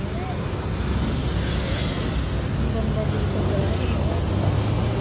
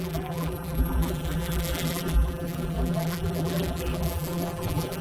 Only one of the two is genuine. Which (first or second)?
first